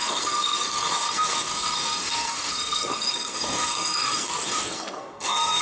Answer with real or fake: fake